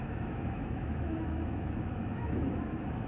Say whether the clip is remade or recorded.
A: remade